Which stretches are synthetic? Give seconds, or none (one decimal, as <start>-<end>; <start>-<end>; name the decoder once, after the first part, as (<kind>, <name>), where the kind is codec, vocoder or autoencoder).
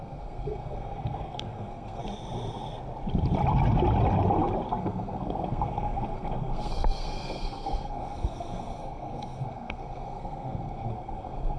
0.0-2.0 (codec, SNAC); 4.8-11.6